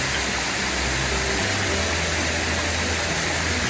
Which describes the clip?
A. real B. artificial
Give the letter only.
A